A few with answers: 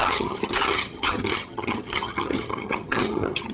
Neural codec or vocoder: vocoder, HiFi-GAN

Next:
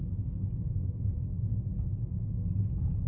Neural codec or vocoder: none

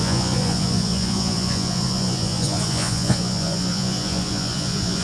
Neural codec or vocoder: vocoder, Vocos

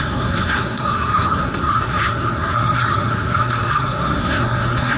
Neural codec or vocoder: codec, SNAC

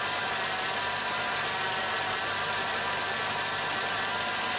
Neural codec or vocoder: none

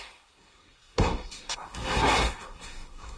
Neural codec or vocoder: codec, SNAC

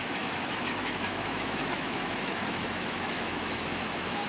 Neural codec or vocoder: autoencoder, DAC-VAE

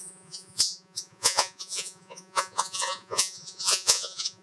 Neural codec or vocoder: vocoder, Vocos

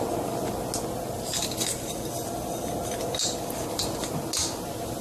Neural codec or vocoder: none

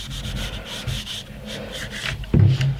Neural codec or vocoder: none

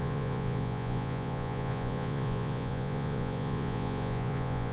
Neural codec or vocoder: vocoder, Vocos